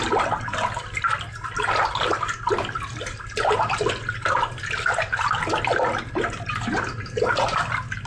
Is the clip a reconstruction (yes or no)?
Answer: no